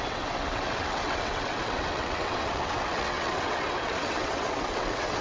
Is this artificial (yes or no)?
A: yes